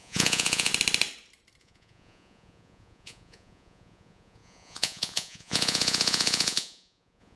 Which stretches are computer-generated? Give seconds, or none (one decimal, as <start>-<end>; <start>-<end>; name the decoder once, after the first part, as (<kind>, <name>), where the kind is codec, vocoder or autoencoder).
0.0-0.7 (vocoder, Vocos); 1.6-7.4